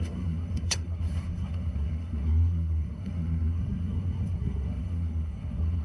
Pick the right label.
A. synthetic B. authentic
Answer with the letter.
A